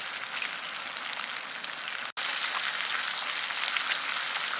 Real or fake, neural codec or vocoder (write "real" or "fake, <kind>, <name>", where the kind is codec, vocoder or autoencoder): real